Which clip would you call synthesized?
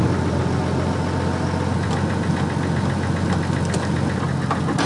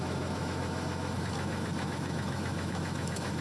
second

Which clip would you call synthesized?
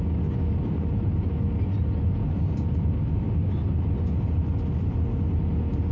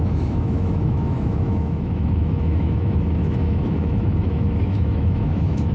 second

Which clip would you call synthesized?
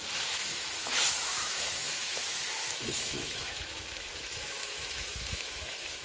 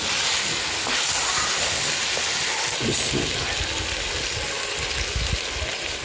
first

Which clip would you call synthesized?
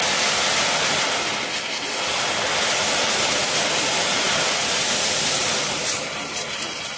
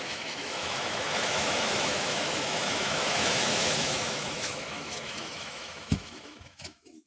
second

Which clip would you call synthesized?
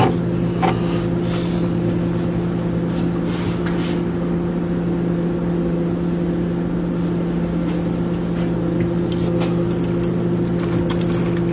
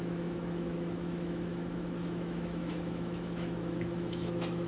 second